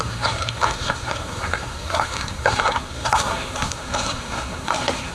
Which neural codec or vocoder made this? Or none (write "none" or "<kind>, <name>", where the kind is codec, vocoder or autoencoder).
codec, SNAC